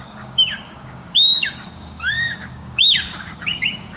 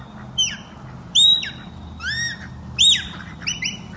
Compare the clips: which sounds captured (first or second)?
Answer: second